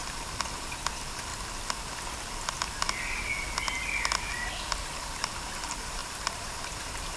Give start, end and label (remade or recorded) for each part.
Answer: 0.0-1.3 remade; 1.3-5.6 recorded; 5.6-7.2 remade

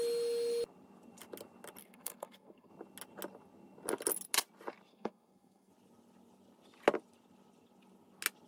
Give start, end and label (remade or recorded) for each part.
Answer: 0.0-1.8 recorded; 1.8-2.7 remade; 2.7-4.9 recorded; 4.9-5.7 remade; 5.7-8.5 recorded

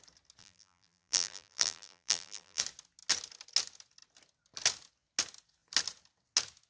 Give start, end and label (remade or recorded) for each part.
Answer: 0.0-0.4 recorded; 0.4-2.6 remade; 2.6-6.7 recorded